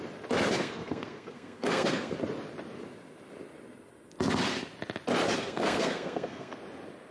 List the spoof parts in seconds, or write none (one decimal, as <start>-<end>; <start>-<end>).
0.6-2.1; 5.4-6.6